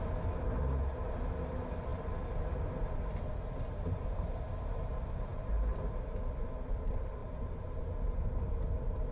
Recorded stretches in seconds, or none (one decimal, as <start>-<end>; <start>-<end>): 0.0-7.2; 7.8-9.1